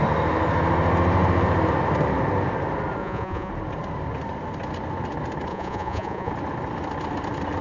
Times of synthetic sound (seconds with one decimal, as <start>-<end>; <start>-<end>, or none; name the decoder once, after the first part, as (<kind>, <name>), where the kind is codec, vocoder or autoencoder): 3.0-3.5 (vocoder, Vocos); 5.5-6.3